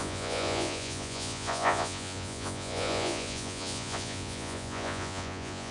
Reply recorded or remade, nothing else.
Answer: remade